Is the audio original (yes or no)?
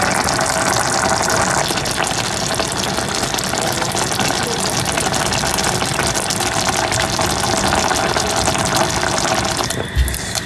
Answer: yes